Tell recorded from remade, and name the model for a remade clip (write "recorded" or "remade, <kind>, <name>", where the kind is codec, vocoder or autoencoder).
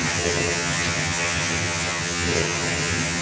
remade, vocoder, HiFi-GAN